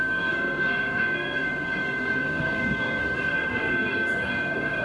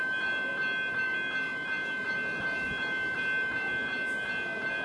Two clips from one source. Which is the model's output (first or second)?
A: first